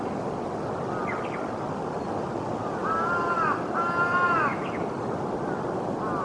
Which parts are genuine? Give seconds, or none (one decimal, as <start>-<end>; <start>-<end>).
0.0-6.2